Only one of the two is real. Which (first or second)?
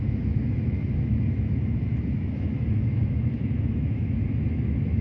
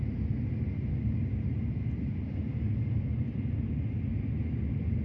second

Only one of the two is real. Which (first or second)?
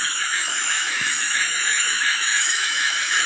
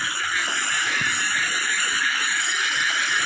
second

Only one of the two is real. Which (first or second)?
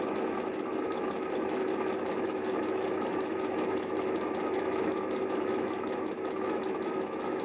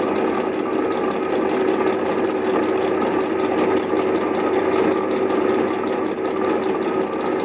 second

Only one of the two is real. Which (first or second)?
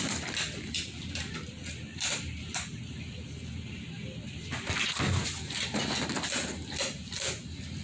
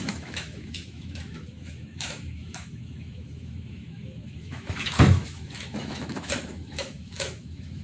first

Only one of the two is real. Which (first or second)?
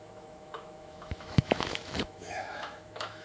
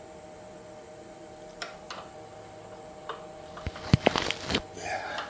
second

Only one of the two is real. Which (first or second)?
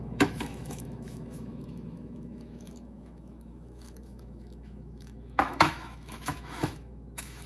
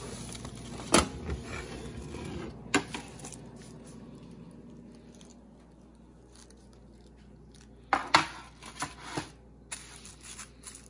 second